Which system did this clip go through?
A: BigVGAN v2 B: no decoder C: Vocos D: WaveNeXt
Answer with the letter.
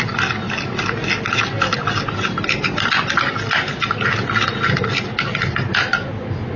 B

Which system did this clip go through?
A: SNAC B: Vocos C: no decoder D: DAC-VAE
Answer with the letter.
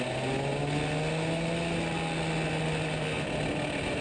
C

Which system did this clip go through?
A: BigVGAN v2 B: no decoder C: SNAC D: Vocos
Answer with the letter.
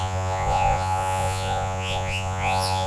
D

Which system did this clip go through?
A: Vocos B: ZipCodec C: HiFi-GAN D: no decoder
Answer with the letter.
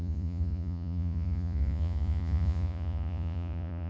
A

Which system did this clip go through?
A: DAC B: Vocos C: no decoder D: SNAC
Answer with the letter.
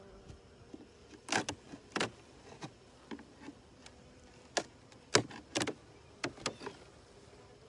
C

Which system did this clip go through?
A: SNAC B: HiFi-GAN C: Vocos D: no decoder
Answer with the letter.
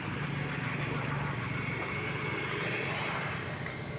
D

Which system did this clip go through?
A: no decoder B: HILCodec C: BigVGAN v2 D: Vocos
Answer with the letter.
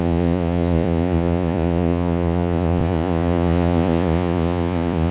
D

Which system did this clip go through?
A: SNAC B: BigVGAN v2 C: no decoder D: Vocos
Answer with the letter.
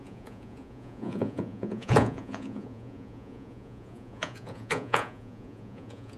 D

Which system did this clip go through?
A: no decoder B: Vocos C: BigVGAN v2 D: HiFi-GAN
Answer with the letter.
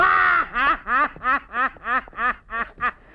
A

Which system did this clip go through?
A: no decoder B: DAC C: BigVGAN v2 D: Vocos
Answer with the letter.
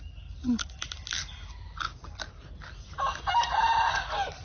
A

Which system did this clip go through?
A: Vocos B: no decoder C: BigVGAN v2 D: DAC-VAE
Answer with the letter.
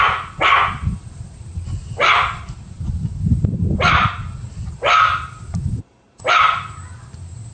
B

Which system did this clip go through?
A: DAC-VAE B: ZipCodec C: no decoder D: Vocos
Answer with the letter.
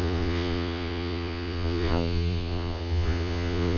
D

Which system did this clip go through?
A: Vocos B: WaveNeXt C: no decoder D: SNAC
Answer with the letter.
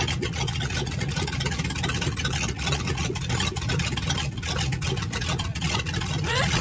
A